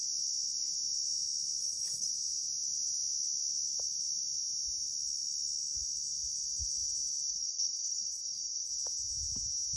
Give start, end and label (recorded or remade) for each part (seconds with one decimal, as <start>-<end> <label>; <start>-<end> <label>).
0.0-1.6 recorded; 1.6-2.1 remade; 2.1-7.3 recorded; 7.3-8.7 remade; 8.7-9.8 recorded